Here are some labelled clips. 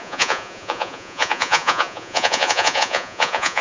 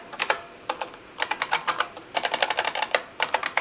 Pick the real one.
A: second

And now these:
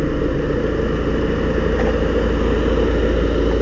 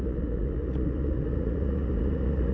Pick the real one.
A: first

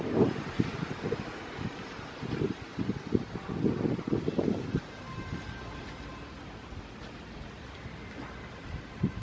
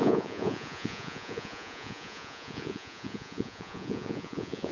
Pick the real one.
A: first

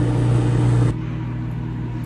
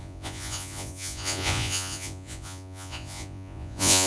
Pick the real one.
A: first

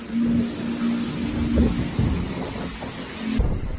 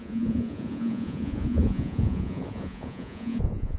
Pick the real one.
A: first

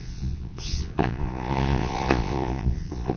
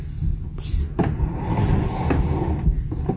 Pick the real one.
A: second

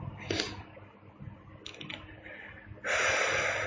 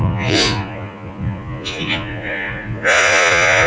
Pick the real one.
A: first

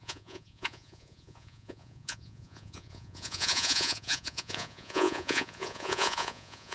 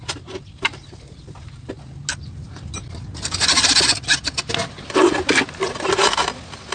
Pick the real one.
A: second